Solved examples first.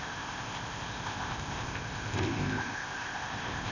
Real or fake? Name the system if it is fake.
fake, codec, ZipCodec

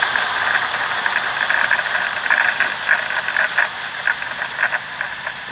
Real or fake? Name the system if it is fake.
real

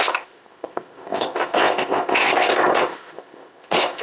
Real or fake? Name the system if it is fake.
fake, codec, ZipCodec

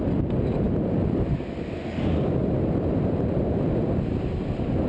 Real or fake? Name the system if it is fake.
real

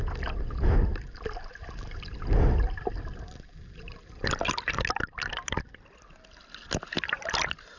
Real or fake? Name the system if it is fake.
real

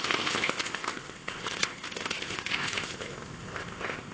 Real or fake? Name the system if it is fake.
fake, codec, ZipCodec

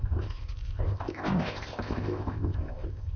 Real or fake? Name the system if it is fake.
fake, codec, ZipCodec